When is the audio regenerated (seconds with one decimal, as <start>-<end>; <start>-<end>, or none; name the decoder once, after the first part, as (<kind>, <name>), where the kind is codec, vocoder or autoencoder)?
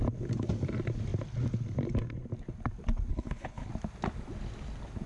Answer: 3.1-3.7 (codec, HILCodec)